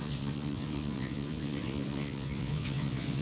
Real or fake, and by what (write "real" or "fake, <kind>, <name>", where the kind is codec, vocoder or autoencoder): fake, vocoder, WaveNeXt